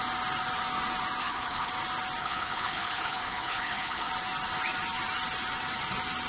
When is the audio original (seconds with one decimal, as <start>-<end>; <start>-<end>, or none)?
0.0-1.2; 1.7-2.2; 4.1-6.3

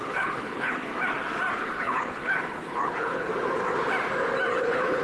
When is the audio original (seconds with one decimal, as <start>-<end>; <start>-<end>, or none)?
0.9-1.5; 3.3-4.5

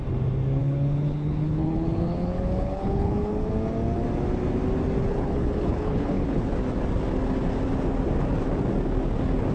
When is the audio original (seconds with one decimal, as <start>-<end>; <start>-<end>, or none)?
0.0-0.6; 3.5-5.1; 6.5-9.5

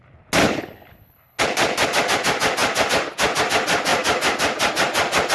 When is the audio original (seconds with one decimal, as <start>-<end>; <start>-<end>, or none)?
0.0-0.4; 1.4-5.3

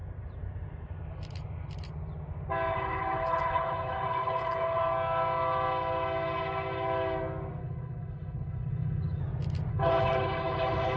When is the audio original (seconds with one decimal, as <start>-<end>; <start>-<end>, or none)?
0.0-2.7; 4.8-7.6; 9.2-9.7

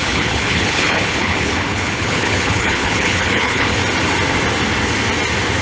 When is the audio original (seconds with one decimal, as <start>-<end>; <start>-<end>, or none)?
3.8-5.6

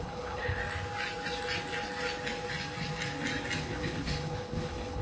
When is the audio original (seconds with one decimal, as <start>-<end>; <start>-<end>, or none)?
0.6-3.6